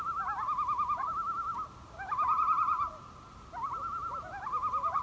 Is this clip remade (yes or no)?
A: no